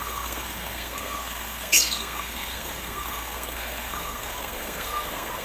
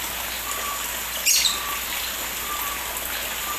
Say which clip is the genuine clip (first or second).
second